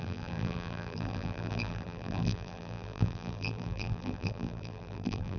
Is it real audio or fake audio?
fake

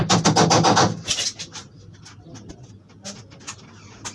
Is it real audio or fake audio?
real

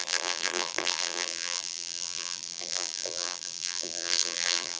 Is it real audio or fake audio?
fake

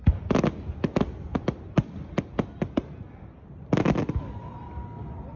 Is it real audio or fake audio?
real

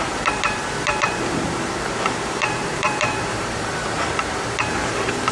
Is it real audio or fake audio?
fake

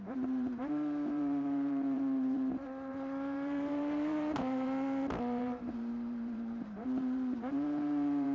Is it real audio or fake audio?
fake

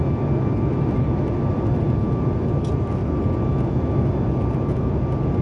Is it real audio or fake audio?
real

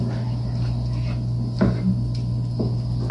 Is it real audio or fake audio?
real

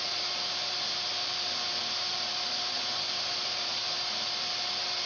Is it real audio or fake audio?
fake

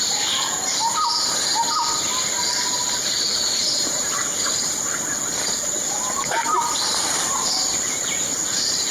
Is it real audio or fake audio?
fake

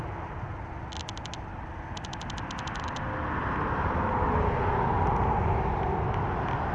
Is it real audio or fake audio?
real